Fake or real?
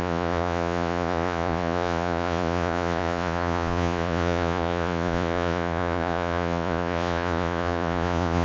fake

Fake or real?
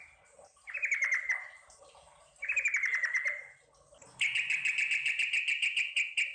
real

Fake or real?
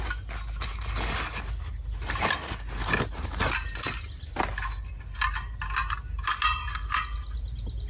real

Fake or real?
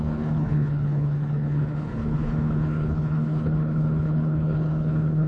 fake